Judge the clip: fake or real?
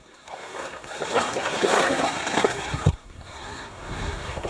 fake